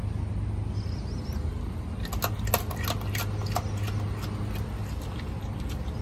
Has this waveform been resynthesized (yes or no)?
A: no